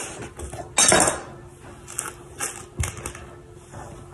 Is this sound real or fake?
real